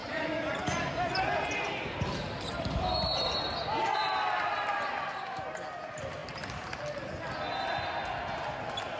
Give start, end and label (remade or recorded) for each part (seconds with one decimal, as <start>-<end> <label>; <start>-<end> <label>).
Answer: 0.0-3.6 remade; 3.6-9.0 recorded

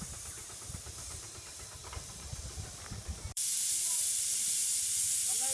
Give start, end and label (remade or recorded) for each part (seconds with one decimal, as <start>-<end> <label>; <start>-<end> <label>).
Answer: 0.0-1.8 remade; 1.8-3.0 recorded; 3.0-4.6 remade; 4.6-5.1 recorded; 5.1-5.5 remade

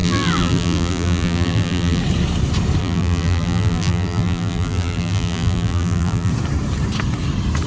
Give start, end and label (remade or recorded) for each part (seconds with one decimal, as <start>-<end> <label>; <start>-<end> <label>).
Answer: 0.0-2.0 remade; 2.0-2.8 recorded; 2.8-6.3 remade; 6.3-7.7 recorded

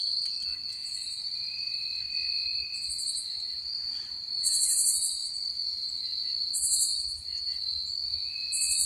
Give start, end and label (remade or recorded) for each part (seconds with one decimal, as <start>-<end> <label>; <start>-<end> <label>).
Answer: 0.0-0.8 recorded; 0.8-1.4 remade; 1.4-5.2 recorded; 5.2-6.0 remade; 6.0-8.9 recorded

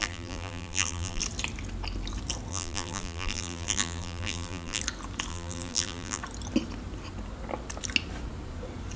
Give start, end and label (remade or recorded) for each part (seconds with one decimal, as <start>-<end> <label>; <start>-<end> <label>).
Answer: 0.0-1.2 remade; 1.2-2.5 recorded; 2.5-4.8 remade; 4.8-5.3 recorded; 5.3-6.2 remade; 6.2-9.0 recorded

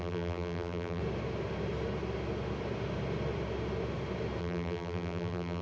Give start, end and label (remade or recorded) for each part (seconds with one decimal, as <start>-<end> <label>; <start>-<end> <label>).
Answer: 0.0-1.0 remade; 1.0-4.4 recorded; 4.4-5.6 remade

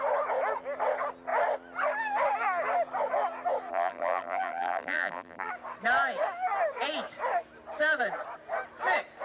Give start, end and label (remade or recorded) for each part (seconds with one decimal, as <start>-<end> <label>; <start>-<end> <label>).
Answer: 0.0-3.7 recorded; 3.7-5.5 remade; 5.5-9.2 recorded

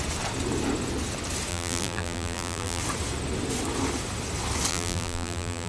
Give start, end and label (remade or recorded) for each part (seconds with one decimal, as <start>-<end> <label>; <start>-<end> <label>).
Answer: 0.0-1.5 recorded; 1.5-2.8 remade; 2.8-4.7 recorded; 4.7-5.7 remade